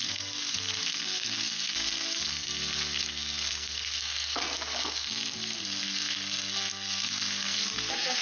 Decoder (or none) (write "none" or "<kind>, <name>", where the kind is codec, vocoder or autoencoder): codec, SNAC